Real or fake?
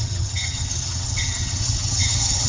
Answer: fake